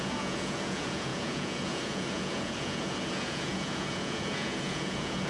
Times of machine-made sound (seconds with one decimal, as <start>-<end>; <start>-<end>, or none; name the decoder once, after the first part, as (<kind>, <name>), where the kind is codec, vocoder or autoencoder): 0.0-5.3 (vocoder, Vocos)